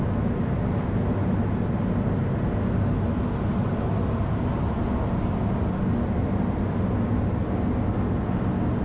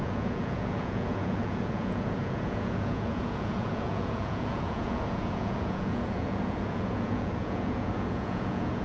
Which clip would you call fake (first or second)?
second